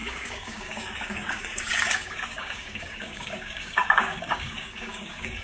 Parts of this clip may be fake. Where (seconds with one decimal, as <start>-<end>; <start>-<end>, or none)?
0.0-5.4